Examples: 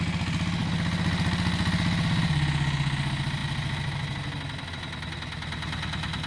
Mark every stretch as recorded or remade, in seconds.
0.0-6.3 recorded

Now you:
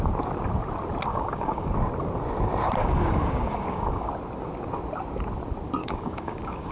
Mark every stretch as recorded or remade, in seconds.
0.0-1.1 recorded; 1.1-1.7 remade; 1.7-2.8 recorded; 2.8-4.1 remade; 4.1-5.8 recorded; 5.8-6.7 remade